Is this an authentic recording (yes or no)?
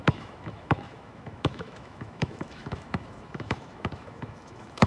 no